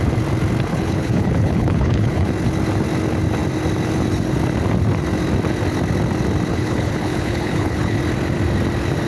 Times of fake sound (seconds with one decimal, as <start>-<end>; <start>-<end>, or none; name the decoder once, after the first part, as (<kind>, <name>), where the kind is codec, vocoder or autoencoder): 0.7-2.3 (codec, HILCodec); 6.5-8.0